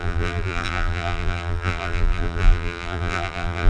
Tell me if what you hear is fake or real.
fake